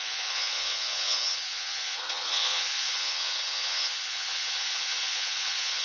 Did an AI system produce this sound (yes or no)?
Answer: yes